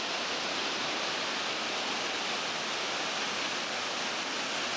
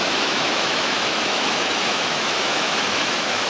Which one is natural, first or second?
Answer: first